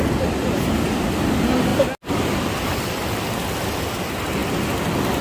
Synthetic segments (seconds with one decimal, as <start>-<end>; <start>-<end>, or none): none